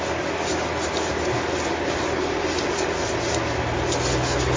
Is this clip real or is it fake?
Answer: real